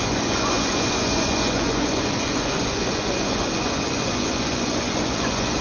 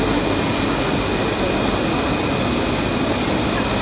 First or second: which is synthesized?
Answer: first